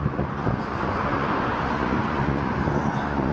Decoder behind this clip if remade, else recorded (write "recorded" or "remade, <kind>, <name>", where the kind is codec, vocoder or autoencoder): remade, vocoder, Vocos